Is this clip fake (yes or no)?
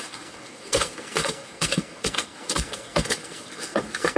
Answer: yes